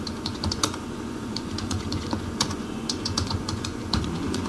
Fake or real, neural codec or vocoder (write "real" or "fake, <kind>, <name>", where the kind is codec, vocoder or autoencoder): fake, vocoder, Vocos